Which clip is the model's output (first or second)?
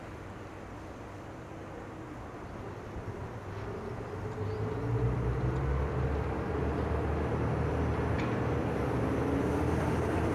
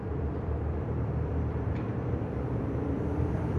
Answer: second